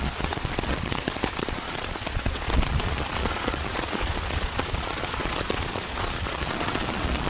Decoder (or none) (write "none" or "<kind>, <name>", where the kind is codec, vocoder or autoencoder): vocoder, Vocos